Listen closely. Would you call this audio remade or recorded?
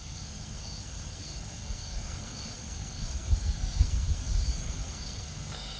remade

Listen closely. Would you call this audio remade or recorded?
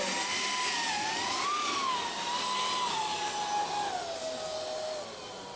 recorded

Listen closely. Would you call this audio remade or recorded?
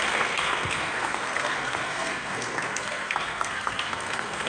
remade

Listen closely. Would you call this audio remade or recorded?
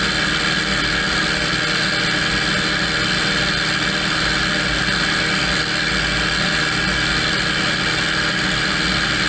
recorded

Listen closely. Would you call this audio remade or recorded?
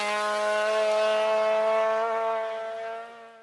recorded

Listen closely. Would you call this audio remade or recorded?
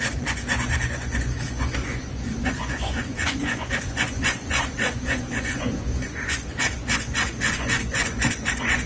remade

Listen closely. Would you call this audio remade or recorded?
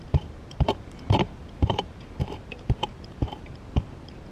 remade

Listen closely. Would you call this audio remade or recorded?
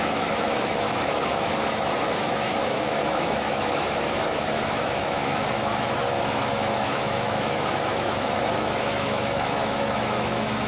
remade